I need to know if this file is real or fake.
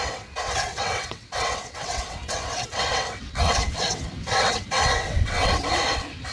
fake